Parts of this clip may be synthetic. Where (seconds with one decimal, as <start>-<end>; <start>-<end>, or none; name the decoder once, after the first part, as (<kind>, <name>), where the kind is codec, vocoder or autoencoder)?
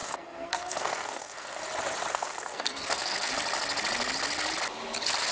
0.0-1.6 (codec, SNAC); 2.1-3.3